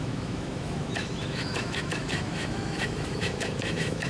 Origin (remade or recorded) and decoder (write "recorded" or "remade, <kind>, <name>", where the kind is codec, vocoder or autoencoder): remade, autoencoder, DAC-VAE